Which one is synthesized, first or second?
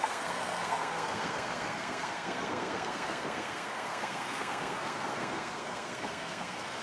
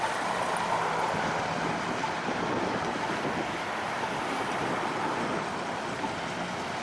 first